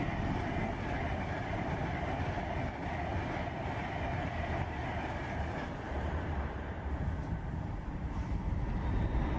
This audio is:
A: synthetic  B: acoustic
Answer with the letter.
A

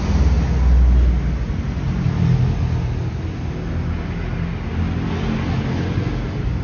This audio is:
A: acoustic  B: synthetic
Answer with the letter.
A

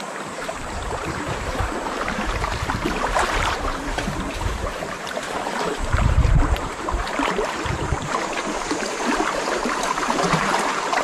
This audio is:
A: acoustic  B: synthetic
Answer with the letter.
B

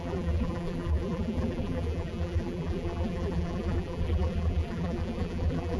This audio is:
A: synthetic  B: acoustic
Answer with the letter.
A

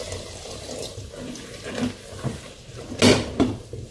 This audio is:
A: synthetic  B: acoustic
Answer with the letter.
B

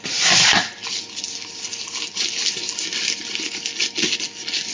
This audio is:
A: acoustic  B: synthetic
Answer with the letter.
A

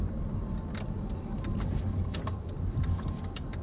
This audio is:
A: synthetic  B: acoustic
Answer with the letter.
A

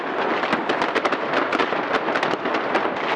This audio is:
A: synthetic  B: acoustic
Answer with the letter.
B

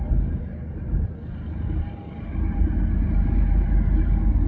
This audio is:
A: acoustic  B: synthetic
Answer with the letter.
A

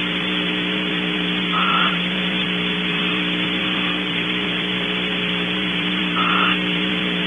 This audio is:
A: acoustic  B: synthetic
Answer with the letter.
B